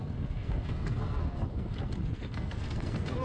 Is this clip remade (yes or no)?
yes